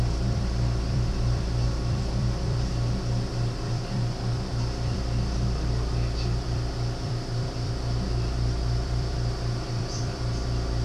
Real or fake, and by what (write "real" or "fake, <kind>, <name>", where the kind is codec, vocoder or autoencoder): fake, vocoder, BigVGAN v2